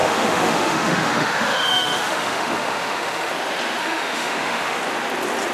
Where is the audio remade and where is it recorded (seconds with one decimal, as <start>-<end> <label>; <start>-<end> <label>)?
0.0-3.3 remade; 3.3-3.8 recorded; 3.8-4.8 remade; 4.8-5.5 recorded